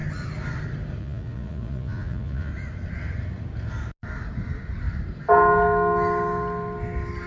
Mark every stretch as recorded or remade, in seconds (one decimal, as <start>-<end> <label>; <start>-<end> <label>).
0.0-1.0 recorded; 1.0-2.5 remade; 2.5-7.3 recorded